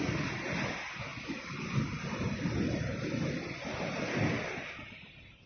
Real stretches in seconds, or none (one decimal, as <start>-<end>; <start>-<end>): 0.0-5.5